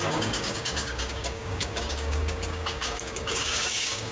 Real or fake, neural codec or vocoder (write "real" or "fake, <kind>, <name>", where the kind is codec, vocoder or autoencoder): fake, codec, DAC